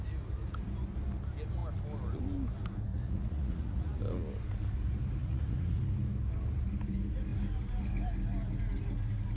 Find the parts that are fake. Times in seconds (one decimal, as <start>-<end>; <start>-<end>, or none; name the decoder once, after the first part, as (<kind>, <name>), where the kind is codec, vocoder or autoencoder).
2.9-4.0 (vocoder, Vocos); 5.2-5.8

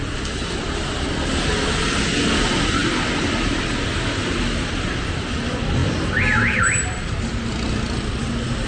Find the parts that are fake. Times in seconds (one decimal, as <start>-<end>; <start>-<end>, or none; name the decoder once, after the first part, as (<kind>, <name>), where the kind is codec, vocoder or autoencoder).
none

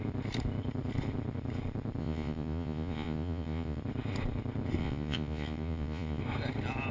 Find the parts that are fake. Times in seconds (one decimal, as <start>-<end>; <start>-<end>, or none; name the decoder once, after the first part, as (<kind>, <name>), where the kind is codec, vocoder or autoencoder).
2.0-3.8 (vocoder, Vocos); 4.8-6.2

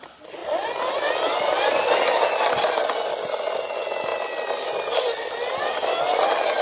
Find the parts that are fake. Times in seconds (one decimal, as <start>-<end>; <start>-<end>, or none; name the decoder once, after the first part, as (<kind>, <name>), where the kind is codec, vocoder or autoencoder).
none

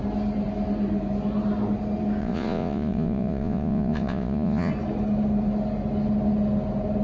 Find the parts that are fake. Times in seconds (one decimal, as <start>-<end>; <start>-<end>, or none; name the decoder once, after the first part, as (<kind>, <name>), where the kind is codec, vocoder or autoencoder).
2.2-4.7 (vocoder, Vocos)

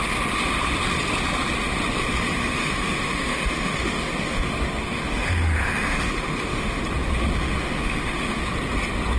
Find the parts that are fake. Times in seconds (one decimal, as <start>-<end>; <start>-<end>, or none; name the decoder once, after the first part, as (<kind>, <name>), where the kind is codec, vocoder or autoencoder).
2.4-6.8 (autoencoder, DAC-VAE); 7.3-8.4

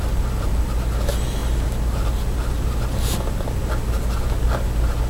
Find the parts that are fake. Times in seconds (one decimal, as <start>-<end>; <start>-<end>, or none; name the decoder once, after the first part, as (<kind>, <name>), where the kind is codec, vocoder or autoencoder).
none